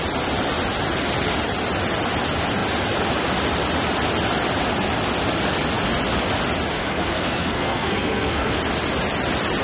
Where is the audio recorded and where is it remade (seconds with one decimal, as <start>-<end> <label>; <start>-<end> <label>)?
0.0-6.8 recorded; 6.8-8.6 remade; 8.6-9.6 recorded